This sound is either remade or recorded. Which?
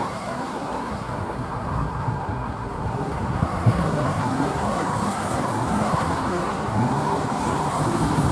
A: remade